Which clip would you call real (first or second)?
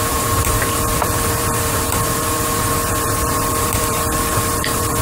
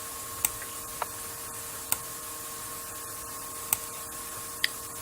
second